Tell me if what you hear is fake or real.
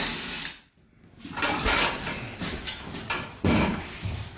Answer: real